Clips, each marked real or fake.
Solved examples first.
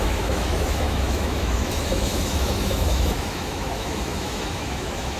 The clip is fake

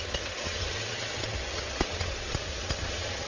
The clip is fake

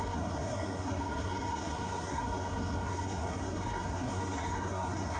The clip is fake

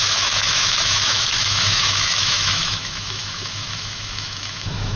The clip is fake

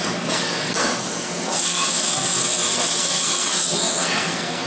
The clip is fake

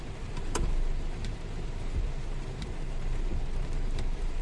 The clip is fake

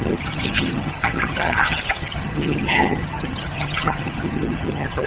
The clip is fake